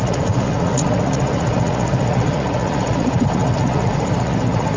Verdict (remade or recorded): remade